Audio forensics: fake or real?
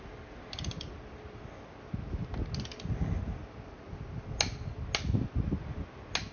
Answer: real